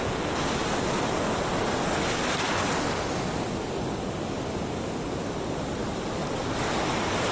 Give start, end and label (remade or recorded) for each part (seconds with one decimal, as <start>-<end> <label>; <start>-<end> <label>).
0.0-0.6 remade; 0.6-5.0 recorded; 5.0-5.8 remade; 5.8-6.5 recorded; 6.5-7.3 remade